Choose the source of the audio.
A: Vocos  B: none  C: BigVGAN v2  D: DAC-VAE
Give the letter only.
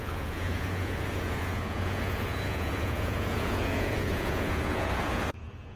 A